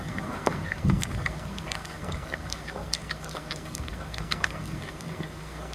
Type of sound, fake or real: fake